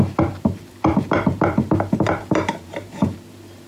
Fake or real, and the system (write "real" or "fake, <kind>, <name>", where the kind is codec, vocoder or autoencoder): fake, vocoder, BigVGAN v2